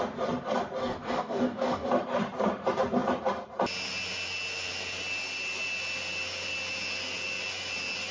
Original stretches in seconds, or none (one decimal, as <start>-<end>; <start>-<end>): 0.0-0.8; 1.9-8.1

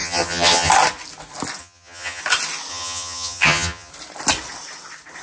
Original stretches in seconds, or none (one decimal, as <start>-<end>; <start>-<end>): 0.7-1.6; 2.2-2.7; 3.9-5.2

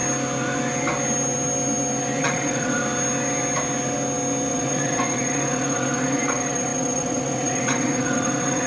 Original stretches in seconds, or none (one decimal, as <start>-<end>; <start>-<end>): 0.0-2.2; 2.8-4.5

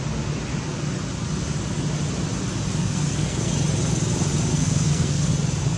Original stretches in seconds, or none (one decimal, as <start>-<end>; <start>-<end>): 0.0-2.8; 3.5-4.5; 5.3-5.8

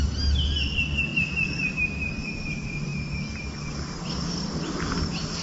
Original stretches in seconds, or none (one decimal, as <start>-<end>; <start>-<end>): 0.0-5.4

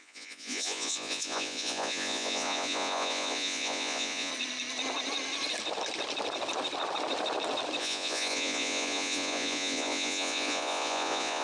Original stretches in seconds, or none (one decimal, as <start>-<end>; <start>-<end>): 4.3-7.8

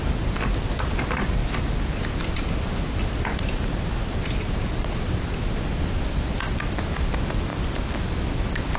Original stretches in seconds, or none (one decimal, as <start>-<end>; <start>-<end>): 0.0-8.8